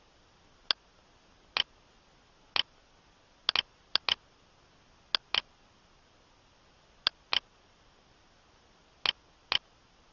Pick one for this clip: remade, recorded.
recorded